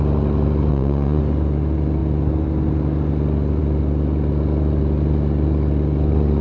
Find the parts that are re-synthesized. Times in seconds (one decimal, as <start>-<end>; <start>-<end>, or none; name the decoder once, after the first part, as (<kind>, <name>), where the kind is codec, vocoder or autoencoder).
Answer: 0.7-1.2 (vocoder, Vocos)